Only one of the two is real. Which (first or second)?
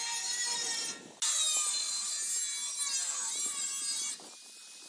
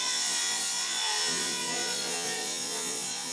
first